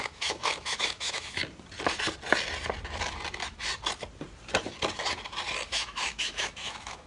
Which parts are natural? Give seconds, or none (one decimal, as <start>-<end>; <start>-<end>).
1.4-5.7